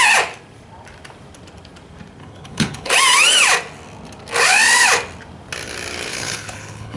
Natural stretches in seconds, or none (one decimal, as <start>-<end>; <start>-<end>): 0.0-2.2; 2.9-6.1